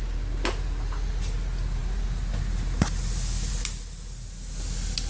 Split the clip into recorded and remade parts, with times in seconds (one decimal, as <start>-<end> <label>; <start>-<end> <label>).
0.0-5.1 recorded